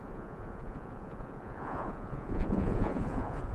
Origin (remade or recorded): remade